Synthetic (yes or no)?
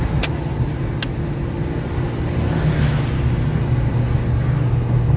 no